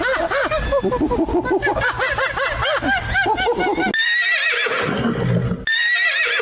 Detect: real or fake real